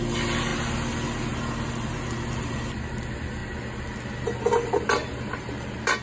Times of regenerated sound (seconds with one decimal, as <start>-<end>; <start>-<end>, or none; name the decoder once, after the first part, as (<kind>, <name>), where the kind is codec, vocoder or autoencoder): none